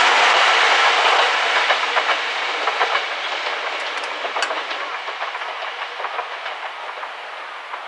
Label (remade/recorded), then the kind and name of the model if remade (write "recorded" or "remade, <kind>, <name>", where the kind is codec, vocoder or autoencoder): recorded